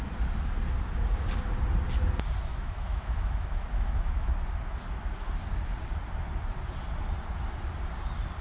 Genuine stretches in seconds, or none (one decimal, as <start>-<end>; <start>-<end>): 0.0-2.5; 4.3-8.4